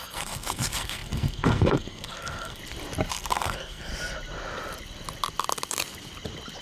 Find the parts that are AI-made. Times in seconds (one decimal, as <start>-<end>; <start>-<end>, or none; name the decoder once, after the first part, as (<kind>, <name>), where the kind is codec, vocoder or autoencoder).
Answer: 0.0-2.6 (codec, SNAC); 3.1-3.9